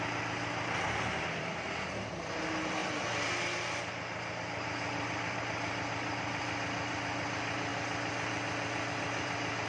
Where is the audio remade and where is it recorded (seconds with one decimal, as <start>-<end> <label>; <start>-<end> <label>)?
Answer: 0.0-7.7 remade; 7.7-8.9 recorded; 8.9-9.7 remade